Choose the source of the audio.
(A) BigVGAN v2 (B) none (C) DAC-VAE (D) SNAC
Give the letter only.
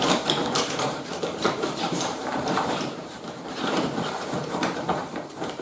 A